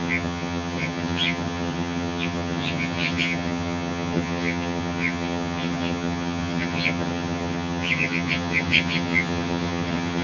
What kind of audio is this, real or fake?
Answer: fake